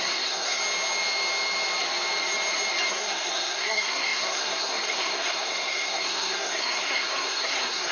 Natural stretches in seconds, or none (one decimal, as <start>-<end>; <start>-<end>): 0.6-2.9